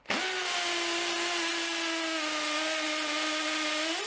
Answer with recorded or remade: recorded